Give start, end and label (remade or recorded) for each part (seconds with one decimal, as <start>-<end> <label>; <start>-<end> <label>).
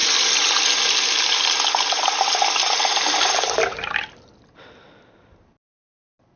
0.0-6.4 recorded